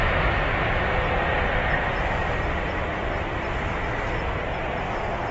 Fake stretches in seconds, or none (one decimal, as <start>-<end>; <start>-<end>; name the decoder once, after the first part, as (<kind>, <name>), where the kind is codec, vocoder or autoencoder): 2.2-4.2 (vocoder, BigVGAN v2)